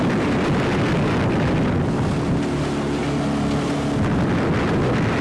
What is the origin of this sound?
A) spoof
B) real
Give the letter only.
B